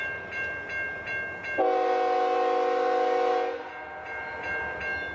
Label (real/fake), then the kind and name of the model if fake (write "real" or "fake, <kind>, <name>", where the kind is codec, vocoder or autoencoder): real